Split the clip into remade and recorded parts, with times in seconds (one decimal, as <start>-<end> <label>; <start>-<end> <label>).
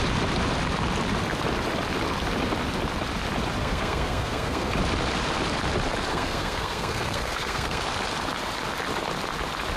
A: 0.0-3.6 recorded; 3.6-4.7 remade; 4.7-6.1 recorded; 6.1-7.8 remade; 7.8-9.8 recorded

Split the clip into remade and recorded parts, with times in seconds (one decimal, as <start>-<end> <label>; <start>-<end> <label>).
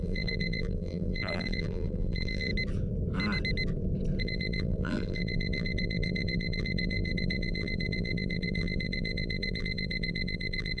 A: 0.0-2.5 remade; 2.5-4.2 recorded; 4.2-10.8 remade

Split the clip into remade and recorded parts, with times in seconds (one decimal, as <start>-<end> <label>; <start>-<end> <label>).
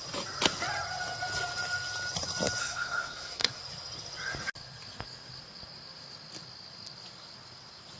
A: 0.0-2.6 recorded; 2.6-3.6 remade; 3.6-8.0 recorded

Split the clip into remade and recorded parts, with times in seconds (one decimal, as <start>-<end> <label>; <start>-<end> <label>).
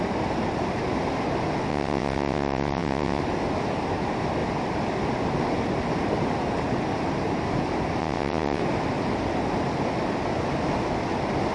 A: 0.0-1.7 recorded; 1.7-3.2 remade; 3.2-8.0 recorded; 8.0-8.6 remade; 8.6-11.5 recorded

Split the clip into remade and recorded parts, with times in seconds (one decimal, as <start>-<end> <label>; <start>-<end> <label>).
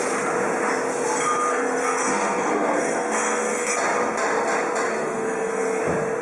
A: 0.0-1.5 recorded; 1.5-3.7 remade; 3.7-4.9 recorded; 4.9-5.8 remade; 5.8-6.2 recorded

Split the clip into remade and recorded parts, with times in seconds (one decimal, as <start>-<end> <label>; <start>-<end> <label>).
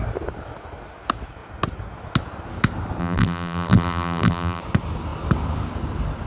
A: 0.0-3.0 recorded; 3.0-4.6 remade; 4.6-6.3 recorded